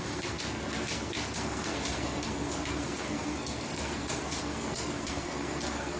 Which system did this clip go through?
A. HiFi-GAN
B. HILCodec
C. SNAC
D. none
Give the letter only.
C